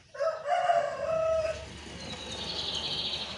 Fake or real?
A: real